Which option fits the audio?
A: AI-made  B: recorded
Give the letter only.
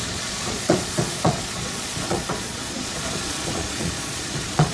A